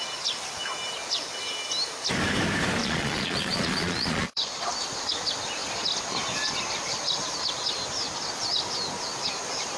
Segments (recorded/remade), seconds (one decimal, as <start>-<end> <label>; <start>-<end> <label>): 0.0-2.8 recorded; 2.8-4.7 remade; 4.7-9.8 recorded